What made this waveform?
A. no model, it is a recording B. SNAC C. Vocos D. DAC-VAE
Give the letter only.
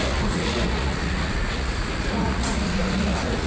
C